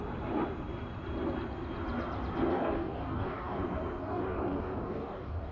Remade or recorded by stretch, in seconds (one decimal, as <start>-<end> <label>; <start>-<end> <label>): 0.0-2.5 recorded; 2.5-3.6 remade; 3.6-4.0 recorded; 4.0-5.5 remade